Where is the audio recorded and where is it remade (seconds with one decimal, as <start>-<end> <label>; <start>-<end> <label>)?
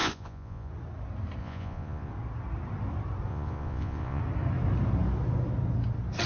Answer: 0.0-0.7 remade; 0.7-1.4 recorded; 1.4-2.1 remade; 2.1-3.3 recorded; 3.3-4.2 remade; 4.2-6.3 recorded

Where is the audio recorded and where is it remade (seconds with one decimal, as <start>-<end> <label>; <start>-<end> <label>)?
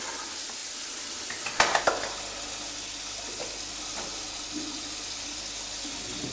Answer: 0.0-6.3 recorded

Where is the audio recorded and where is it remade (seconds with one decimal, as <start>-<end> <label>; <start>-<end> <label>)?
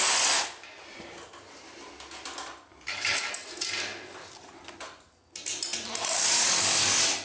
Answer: 0.0-2.7 recorded; 2.7-3.3 remade; 3.3-7.2 recorded